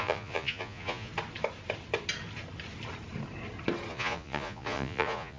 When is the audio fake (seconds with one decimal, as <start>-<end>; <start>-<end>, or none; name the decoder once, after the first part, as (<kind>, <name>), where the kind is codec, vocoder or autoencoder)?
0.0-1.1 (vocoder, Vocos); 3.9-5.4